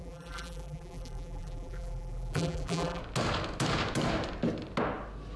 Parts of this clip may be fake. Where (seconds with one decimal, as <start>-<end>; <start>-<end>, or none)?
0.0-3.0